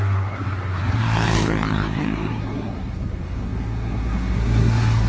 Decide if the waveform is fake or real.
fake